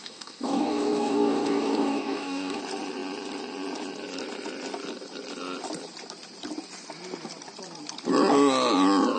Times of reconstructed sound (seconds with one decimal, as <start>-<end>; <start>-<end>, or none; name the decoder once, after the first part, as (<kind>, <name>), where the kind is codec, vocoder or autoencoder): 0.0-2.6 (codec, DAC)